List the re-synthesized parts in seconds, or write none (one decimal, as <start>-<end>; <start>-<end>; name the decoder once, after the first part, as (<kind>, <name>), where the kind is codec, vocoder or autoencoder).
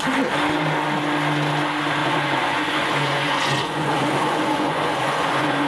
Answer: 2.0-5.7 (vocoder, Vocos)